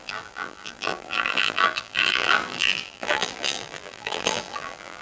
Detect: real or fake fake